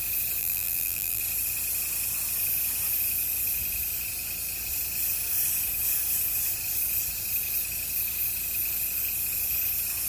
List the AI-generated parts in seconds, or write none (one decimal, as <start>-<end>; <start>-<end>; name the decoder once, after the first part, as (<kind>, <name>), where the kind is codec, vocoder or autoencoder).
0.4-1.2 (vocoder, BigVGAN v2)